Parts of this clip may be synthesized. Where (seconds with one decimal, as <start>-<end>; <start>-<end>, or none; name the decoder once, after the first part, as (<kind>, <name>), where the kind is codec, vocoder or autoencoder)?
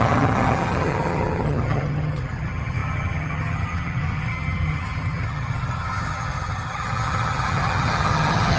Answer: 0.0-8.6 (vocoder, HiFi-GAN)